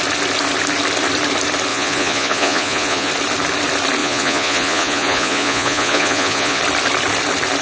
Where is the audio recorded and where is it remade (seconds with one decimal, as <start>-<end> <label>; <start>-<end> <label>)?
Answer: 0.0-1.7 recorded; 1.7-3.1 remade; 3.1-4.0 recorded; 4.0-6.6 remade; 6.6-7.6 recorded